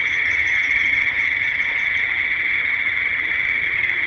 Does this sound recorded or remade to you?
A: remade